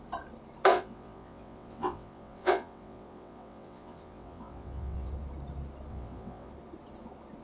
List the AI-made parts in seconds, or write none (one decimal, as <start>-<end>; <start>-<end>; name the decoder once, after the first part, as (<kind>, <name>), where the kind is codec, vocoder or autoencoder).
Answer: 0.7-5.1 (vocoder, WaveNeXt); 5.9-6.5